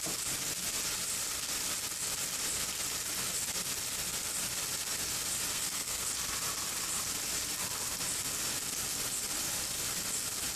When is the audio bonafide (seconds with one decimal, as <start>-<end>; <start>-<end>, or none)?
0.0-5.5; 6.0-10.6